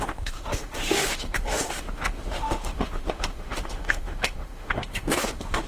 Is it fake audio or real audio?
fake